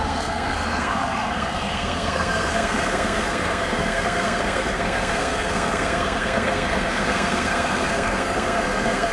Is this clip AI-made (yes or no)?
yes